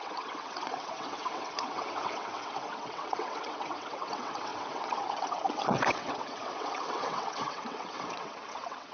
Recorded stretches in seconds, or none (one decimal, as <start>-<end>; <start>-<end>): none